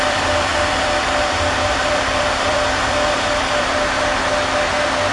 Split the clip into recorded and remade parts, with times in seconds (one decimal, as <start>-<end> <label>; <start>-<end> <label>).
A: 0.0-4.1 remade; 4.1-5.1 recorded